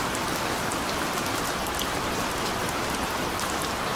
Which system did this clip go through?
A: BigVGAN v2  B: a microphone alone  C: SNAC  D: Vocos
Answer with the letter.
B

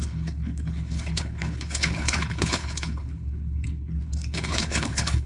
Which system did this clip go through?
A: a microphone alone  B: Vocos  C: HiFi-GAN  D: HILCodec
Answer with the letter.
D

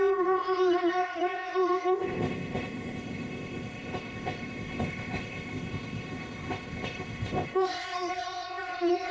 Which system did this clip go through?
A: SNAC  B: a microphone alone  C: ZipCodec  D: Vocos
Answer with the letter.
C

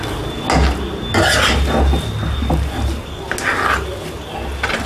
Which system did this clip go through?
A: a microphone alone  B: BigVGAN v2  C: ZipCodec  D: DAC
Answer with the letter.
A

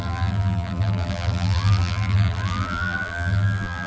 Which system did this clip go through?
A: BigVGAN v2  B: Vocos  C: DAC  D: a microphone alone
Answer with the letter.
A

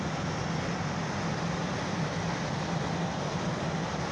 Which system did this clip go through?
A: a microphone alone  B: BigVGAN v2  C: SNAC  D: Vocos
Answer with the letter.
A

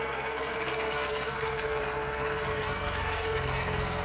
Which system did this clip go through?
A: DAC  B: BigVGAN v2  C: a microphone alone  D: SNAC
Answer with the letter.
D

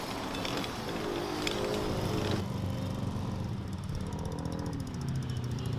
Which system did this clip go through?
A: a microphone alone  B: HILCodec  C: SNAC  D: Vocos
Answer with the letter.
A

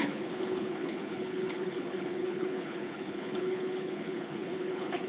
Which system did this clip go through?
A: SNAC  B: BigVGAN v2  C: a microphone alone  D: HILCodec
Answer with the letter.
D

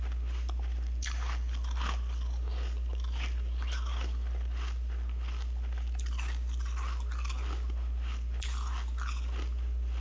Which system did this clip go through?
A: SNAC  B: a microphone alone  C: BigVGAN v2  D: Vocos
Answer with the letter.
B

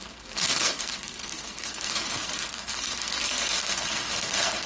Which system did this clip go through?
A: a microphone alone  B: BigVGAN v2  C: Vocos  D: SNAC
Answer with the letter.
D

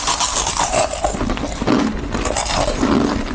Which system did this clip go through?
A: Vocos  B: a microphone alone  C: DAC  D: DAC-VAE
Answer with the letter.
B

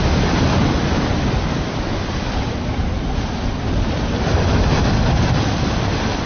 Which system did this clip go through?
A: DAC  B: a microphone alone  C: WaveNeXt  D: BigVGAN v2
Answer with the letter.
D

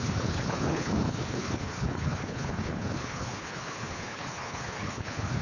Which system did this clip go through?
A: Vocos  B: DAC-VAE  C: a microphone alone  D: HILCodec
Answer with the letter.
D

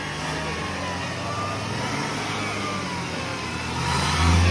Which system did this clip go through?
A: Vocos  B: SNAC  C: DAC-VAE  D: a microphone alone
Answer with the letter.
D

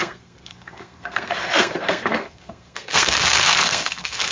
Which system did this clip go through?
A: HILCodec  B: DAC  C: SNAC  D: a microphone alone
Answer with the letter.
C